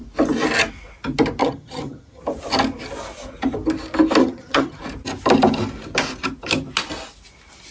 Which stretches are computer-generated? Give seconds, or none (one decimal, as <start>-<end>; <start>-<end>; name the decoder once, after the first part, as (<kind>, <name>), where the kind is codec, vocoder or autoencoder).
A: 1.4-2.2 (vocoder, HiFi-GAN); 4.2-4.8